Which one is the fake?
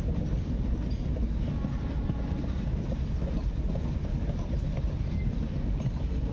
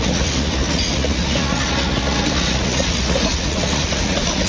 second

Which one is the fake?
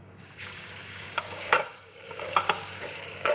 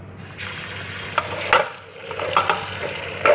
first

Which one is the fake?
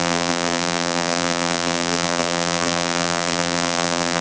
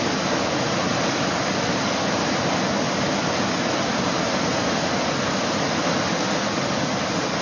first